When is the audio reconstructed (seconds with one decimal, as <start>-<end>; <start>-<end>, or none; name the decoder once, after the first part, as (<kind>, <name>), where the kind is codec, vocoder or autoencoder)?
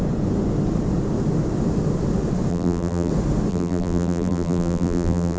2.5-3.1 (vocoder, BigVGAN v2); 3.5-5.4